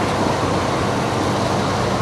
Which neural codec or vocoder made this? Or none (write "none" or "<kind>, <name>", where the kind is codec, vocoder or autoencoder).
none